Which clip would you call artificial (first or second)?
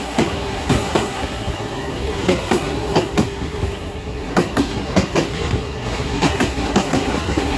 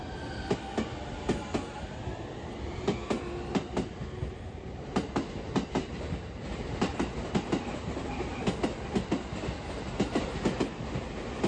first